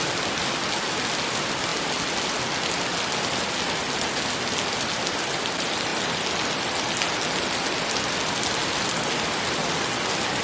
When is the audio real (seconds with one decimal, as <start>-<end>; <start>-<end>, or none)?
0.0-10.4